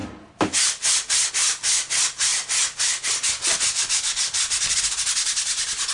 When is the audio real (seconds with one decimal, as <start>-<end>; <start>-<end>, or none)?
0.0-5.9